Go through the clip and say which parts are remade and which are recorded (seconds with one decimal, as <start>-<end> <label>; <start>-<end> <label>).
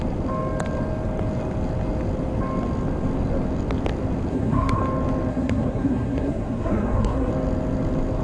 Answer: 0.0-4.3 recorded; 4.3-4.8 remade; 4.8-5.3 recorded; 5.3-7.3 remade; 7.3-8.2 recorded